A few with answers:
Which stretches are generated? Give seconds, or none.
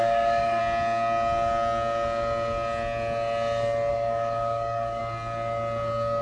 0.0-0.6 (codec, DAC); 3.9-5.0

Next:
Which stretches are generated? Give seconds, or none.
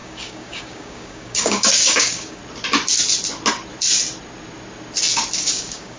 0.0-2.4 (codec, DAC); 5.4-6.0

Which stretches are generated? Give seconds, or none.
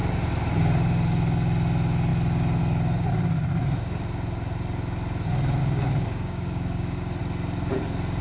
5.6-7.2 (codec, DAC)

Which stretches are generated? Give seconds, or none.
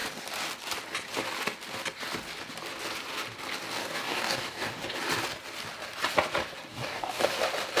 3.8-5.0 (codec, DAC); 6.7-7.2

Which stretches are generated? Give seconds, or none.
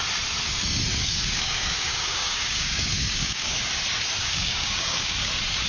1.0-3.7 (codec, DAC); 4.2-5.3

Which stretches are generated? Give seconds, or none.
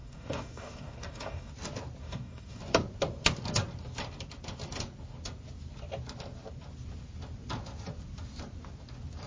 0.0-1.5 (codec, DAC); 2.0-2.6